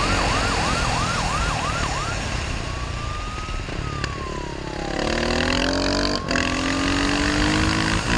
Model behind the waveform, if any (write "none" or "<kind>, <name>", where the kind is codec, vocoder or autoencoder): none